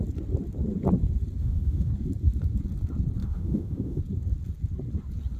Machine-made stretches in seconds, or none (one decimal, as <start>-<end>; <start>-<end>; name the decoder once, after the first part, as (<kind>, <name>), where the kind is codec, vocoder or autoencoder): 1.4-1.9 (autoencoder, DAC-VAE); 3.2-4.0